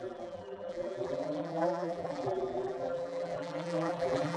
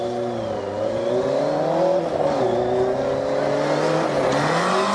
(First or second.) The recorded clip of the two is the second